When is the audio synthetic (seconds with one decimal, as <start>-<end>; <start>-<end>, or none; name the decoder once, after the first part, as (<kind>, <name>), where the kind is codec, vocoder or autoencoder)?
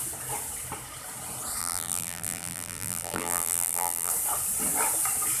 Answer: 1.6-4.1 (vocoder, BigVGAN v2)